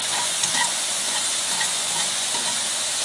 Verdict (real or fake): fake